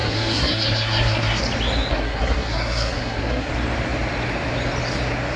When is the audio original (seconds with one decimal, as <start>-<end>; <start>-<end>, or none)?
1.4-1.9; 3.5-5.4